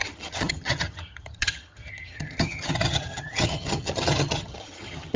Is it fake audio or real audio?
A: fake